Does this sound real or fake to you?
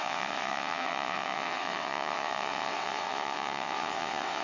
fake